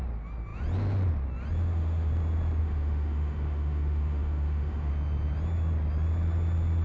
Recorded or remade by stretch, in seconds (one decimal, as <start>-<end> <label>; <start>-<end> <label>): 0.0-1.6 recorded; 1.6-2.1 remade; 2.1-2.6 recorded; 2.6-4.9 remade; 4.9-6.8 recorded